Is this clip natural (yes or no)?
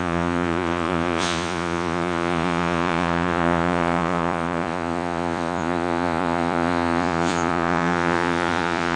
no